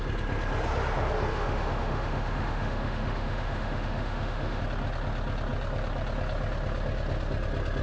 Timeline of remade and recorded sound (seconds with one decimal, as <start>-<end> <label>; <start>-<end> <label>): 0.0-1.3 recorded; 1.3-4.6 remade; 4.6-7.8 recorded